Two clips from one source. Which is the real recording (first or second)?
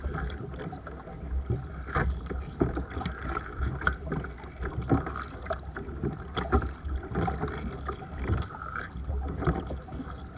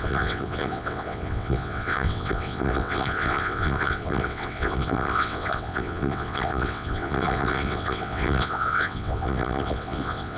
first